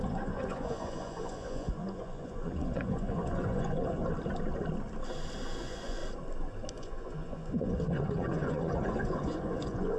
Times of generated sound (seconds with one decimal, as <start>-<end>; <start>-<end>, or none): 0.0-4.0; 5.6-6.0; 6.7-10.0